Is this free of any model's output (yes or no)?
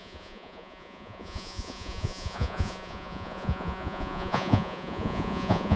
no